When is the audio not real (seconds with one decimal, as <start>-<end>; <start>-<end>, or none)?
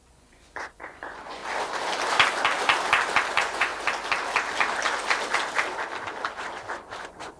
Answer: 0.0-1.4; 3.3-3.7; 7.0-7.4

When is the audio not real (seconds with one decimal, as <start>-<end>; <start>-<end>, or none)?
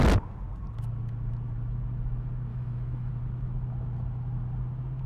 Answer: 2.5-3.1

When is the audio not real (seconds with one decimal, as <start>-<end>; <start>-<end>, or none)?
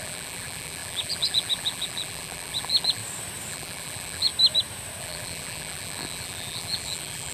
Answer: 0.0-3.0; 3.5-4.3; 5.0-7.3